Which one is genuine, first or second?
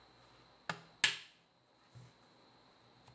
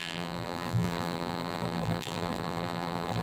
first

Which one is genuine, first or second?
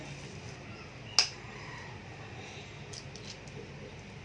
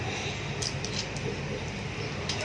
first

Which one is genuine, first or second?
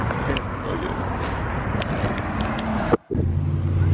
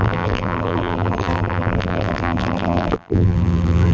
first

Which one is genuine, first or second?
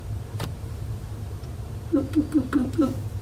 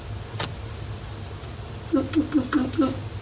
second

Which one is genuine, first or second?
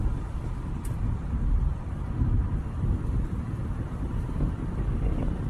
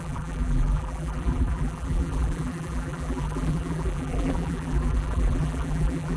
first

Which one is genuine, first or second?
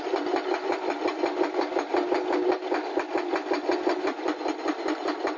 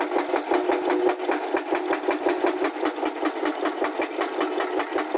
second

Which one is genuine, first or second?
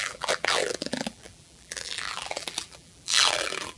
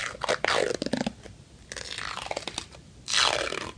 second